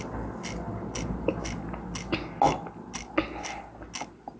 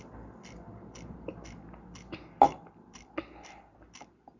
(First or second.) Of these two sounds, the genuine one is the first